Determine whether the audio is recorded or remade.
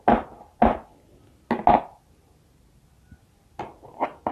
recorded